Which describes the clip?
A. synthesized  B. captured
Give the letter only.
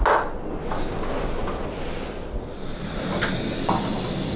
B